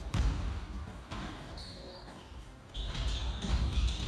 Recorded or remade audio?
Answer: remade